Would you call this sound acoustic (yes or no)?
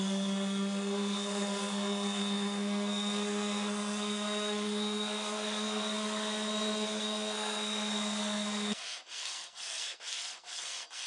no